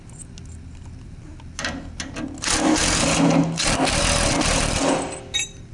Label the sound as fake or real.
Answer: real